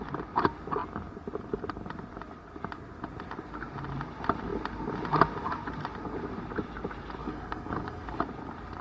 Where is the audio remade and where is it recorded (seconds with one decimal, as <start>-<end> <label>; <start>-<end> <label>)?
0.0-7.2 recorded; 7.2-8.2 remade; 8.2-8.8 recorded